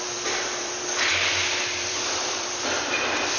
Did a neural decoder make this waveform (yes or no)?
yes